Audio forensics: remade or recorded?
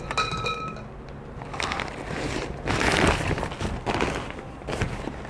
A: recorded